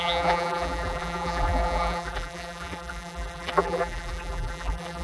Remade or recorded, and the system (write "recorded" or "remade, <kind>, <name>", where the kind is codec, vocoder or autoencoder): remade, vocoder, BigVGAN v2